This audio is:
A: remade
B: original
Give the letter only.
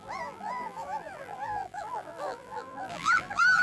A